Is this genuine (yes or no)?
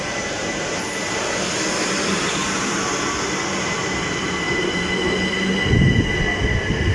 yes